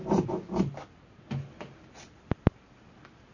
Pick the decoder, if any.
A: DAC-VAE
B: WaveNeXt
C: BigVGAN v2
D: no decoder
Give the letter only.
D